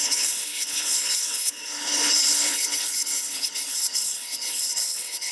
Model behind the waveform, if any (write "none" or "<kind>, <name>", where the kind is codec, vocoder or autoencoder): codec, HILCodec